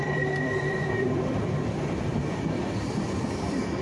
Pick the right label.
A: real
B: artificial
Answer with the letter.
B